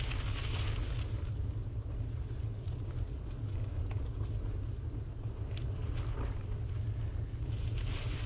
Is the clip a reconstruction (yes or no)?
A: no